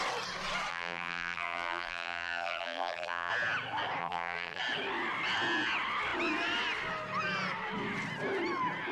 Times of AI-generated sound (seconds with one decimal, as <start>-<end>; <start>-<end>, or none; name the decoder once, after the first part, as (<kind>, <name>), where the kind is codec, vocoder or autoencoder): 0.7-3.3 (vocoder, BigVGAN v2); 4.0-4.6